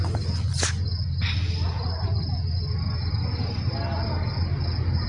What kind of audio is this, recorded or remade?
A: recorded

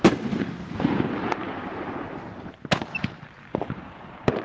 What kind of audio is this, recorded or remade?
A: remade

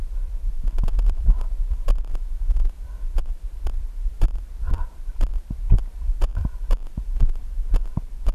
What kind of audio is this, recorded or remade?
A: remade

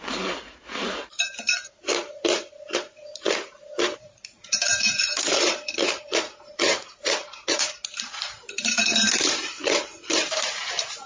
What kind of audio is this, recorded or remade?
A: remade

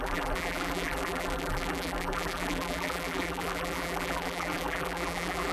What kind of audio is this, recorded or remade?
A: remade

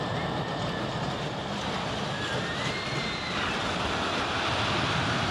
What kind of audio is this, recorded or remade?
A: remade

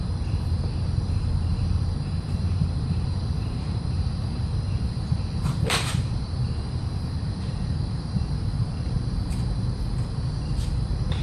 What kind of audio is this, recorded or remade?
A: remade